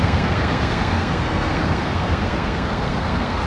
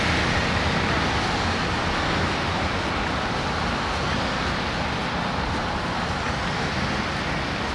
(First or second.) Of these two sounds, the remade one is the first